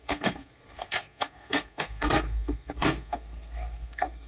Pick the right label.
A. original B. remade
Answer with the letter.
B